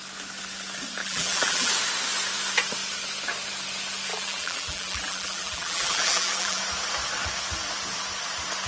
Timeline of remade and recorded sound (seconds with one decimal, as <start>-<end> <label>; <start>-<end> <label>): 0.0-1.0 recorded; 1.0-1.7 remade; 1.7-4.1 recorded; 4.1-6.6 remade; 6.6-8.7 recorded